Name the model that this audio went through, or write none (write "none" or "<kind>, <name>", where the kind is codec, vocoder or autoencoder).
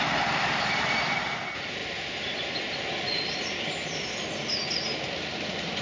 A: none